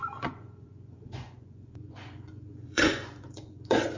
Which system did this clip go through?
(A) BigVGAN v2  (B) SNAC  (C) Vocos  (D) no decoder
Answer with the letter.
C